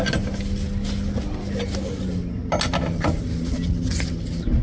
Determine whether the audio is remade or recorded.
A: recorded